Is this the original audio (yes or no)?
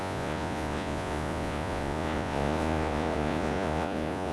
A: no